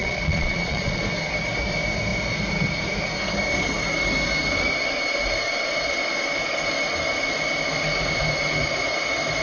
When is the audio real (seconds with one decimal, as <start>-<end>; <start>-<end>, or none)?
1.0-9.4